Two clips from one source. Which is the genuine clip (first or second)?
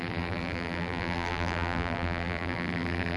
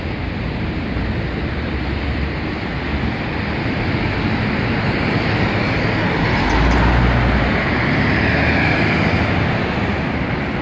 second